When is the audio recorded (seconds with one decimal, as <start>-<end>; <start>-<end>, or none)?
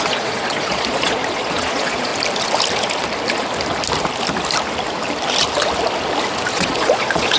2.1-6.5